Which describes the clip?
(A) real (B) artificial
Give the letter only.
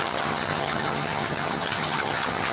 B